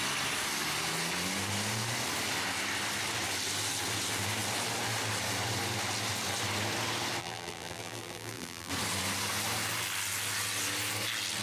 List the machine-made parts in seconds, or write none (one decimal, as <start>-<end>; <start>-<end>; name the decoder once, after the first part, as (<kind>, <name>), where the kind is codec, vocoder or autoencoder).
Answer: 7.2-8.7 (vocoder, BigVGAN v2)